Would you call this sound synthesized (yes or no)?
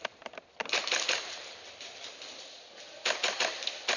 no